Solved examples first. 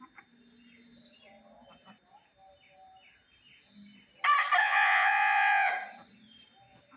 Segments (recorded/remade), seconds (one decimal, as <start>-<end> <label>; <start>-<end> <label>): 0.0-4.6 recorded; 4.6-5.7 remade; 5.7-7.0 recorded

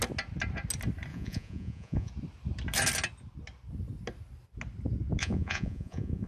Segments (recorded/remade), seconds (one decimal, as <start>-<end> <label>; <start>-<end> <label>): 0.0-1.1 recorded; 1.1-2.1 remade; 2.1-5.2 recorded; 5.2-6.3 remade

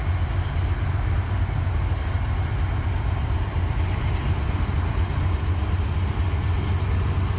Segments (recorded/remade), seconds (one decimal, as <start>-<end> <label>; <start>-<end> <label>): 0.0-7.4 recorded